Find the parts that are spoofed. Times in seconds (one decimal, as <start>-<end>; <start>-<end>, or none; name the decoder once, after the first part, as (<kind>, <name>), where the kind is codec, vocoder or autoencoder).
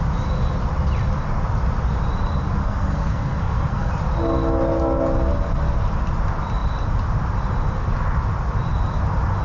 2.6-3.9 (codec, SNAC)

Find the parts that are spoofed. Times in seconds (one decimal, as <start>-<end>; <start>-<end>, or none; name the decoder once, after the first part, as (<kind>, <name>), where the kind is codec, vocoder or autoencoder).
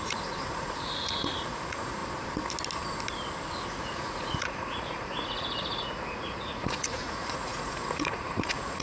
0.0-2.0 (vocoder, Vocos); 3.7-8.8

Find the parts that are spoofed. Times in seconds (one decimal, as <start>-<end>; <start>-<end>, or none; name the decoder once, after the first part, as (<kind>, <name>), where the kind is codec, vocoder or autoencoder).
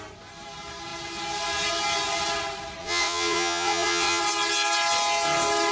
2.8-4.2 (vocoder, Vocos)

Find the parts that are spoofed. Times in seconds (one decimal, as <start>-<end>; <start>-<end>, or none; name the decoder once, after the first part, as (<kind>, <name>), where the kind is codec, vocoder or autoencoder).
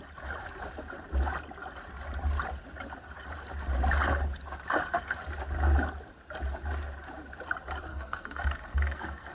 7.9-9.3 (codec, SNAC)